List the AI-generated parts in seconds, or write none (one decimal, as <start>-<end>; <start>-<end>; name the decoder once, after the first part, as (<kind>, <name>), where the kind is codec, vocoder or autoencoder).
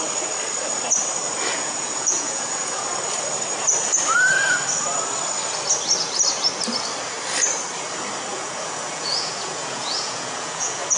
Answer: 1.5-2.9 (vocoder, Vocos); 8.3-11.0